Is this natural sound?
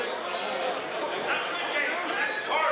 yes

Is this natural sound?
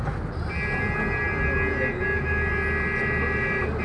yes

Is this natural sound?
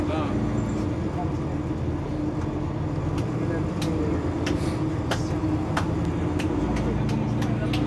yes